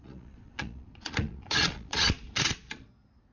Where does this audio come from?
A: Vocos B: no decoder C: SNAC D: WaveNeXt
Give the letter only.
A